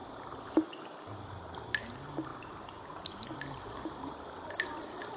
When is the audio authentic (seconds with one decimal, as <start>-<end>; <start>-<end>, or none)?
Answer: 0.8-2.3; 4.6-5.2